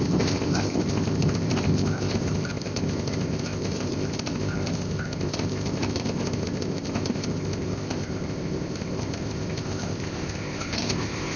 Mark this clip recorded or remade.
remade